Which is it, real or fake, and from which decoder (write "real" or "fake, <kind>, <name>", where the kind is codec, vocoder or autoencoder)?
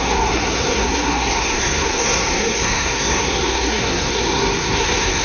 fake, codec, SNAC